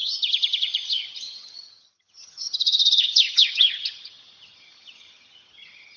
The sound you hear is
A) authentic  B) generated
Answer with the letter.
B